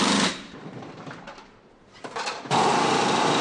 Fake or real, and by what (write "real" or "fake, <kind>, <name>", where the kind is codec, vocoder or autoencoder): fake, vocoder, BigVGAN v2